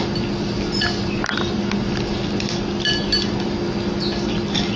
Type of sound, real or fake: real